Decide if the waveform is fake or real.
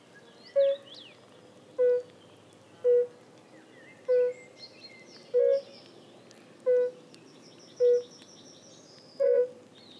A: real